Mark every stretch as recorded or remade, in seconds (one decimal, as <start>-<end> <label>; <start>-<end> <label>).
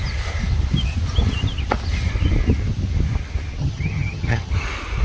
0.0-3.6 recorded; 3.6-4.5 remade; 4.5-5.0 recorded